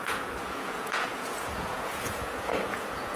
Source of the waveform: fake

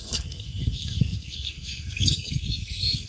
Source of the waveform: fake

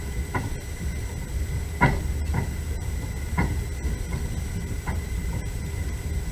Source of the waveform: real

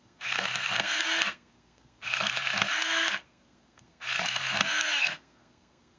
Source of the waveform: fake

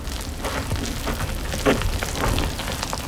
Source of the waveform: real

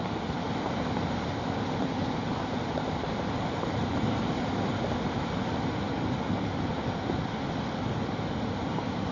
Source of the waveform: real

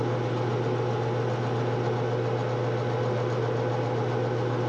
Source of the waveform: real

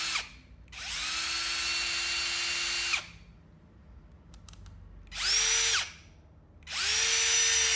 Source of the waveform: real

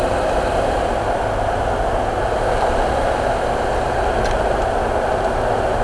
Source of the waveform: real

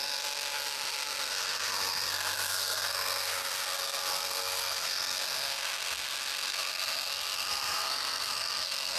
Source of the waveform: fake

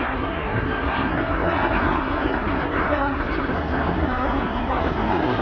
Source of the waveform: fake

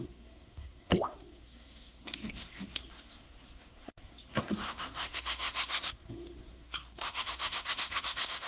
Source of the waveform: fake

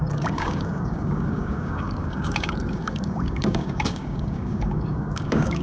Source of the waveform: fake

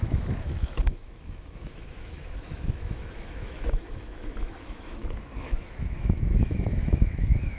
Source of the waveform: fake